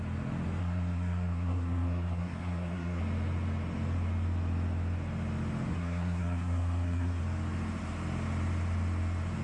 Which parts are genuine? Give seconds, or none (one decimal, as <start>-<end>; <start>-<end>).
0.0-0.6; 3.0-5.7; 7.2-9.4